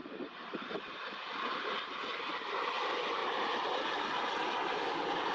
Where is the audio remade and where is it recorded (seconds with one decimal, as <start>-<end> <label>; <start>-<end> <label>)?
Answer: 0.0-2.8 remade; 2.8-5.3 recorded